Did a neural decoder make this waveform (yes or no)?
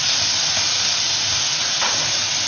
no